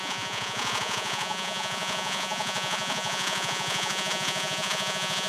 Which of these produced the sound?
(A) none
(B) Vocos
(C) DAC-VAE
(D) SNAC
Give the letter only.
B